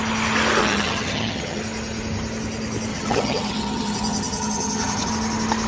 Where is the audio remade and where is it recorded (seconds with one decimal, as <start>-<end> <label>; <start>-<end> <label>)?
0.0-0.6 recorded; 0.6-1.6 remade; 1.6-2.9 recorded; 2.9-5.1 remade; 5.1-5.7 recorded